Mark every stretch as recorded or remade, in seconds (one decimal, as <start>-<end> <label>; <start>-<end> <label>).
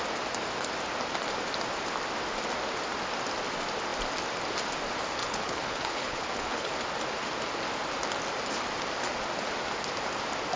0.0-5.2 recorded; 5.2-6.7 remade; 6.7-10.6 recorded